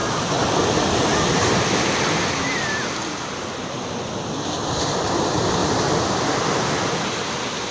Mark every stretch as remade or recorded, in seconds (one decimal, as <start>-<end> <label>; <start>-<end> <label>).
0.0-7.7 recorded